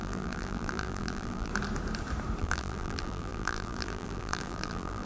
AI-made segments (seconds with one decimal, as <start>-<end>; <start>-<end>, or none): 0.0-1.5; 2.4-5.1